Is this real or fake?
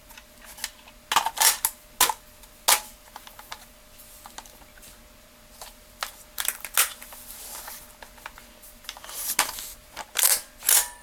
real